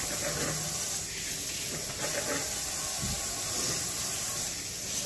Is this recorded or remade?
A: recorded